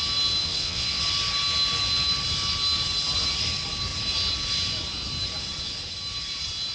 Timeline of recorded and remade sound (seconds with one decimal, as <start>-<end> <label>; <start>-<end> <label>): 0.0-0.4 recorded; 0.4-1.0 remade; 1.0-6.7 recorded